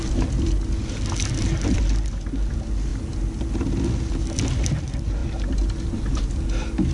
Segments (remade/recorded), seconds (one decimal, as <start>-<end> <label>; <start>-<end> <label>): 0.0-6.9 recorded